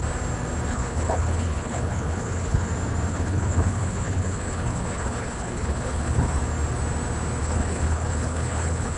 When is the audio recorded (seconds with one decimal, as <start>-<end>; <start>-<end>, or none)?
0.0-0.7; 2.7-3.1; 6.4-7.4